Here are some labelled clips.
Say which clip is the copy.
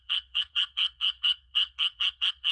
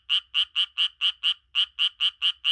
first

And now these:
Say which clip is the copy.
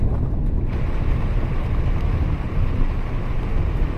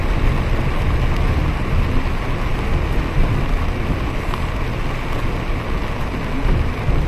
first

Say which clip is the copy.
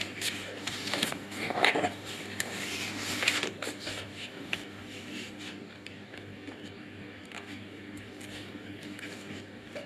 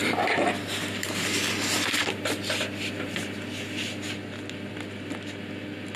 first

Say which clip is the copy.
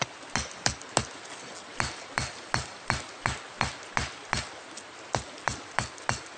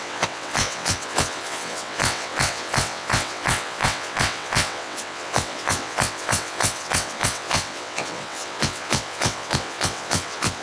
second